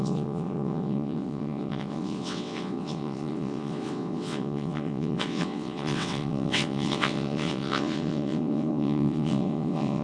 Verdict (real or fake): fake